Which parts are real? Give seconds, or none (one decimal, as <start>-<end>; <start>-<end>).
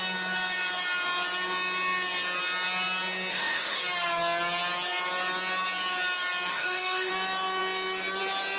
0.0-3.3; 3.8-6.5; 7.1-8.6